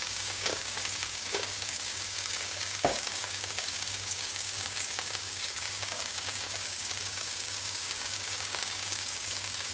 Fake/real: fake